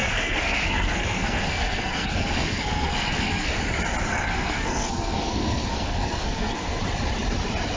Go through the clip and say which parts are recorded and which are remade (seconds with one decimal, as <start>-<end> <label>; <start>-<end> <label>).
0.0-3.6 remade; 3.6-4.1 recorded; 4.1-6.8 remade; 6.8-7.8 recorded